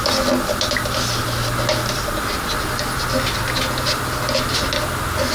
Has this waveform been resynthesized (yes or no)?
no